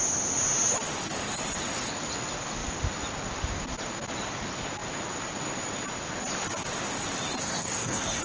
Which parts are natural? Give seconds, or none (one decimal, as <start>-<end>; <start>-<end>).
0.0-7.4

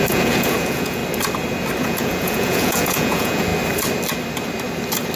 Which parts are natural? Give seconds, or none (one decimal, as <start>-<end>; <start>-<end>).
1.0-1.8; 3.5-5.2

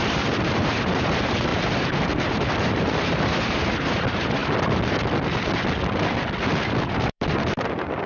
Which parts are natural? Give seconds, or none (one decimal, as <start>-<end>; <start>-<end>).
4.4-7.0

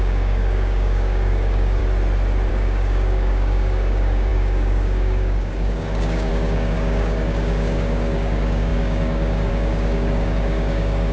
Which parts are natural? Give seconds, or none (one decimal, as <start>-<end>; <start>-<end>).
1.8-2.5

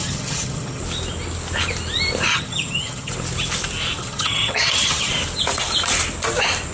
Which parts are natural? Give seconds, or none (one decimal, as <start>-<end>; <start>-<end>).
0.8-2.3; 3.1-4.0; 5.1-6.7

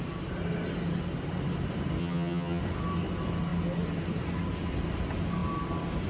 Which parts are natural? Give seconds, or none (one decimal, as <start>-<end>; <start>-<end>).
0.0-2.0; 2.6-6.1

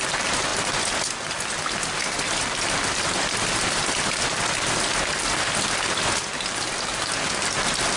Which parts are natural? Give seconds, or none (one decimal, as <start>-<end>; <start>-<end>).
0.0-8.0